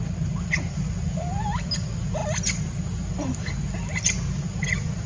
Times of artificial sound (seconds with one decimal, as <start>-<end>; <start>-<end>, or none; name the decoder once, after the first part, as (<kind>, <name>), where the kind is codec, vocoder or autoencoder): none